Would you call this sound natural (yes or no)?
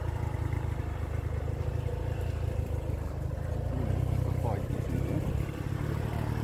yes